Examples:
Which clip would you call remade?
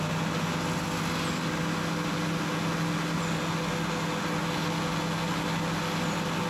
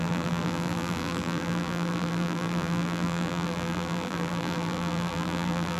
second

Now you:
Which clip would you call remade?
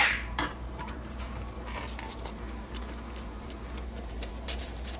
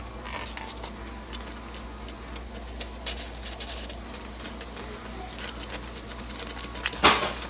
first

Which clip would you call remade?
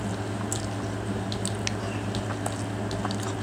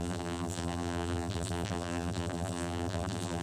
second